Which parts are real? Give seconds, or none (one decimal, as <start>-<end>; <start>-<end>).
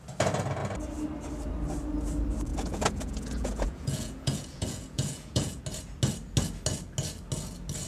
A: 0.0-2.5; 5.6-7.9